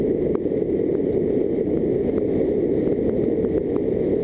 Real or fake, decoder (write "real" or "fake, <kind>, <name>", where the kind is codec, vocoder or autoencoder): real